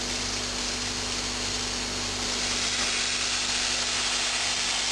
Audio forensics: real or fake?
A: real